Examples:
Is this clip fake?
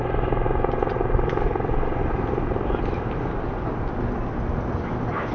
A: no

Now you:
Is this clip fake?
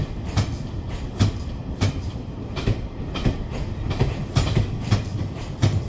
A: yes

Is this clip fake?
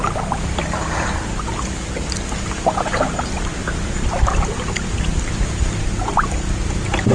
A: no